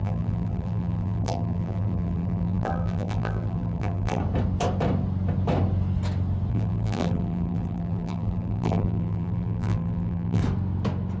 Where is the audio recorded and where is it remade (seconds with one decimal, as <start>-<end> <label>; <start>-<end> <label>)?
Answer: 0.0-4.2 remade; 4.2-6.5 recorded; 6.5-10.4 remade; 10.4-11.2 recorded